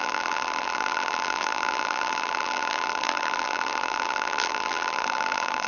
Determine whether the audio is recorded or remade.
remade